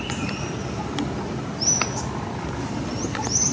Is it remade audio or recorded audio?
recorded